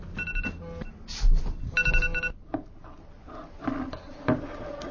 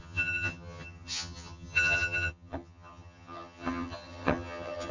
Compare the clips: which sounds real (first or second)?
first